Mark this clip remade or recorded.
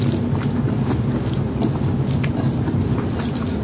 recorded